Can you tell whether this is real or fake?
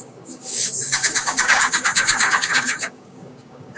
fake